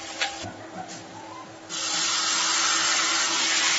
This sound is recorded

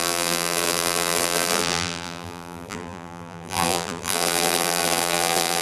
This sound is remade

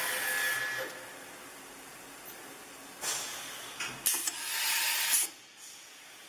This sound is recorded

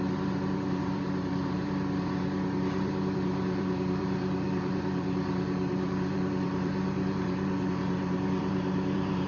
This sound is remade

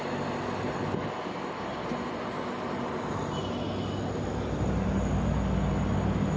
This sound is recorded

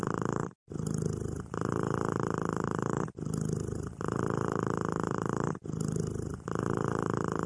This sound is remade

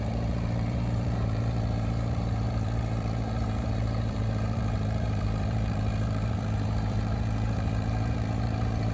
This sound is remade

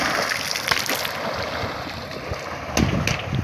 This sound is recorded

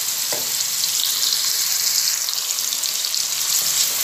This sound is recorded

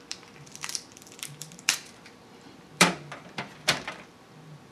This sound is remade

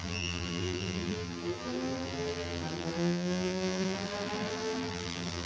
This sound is remade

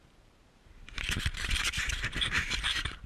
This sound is remade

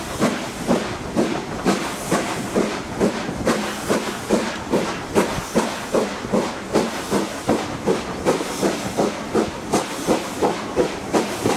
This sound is recorded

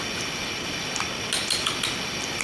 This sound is remade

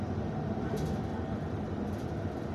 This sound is recorded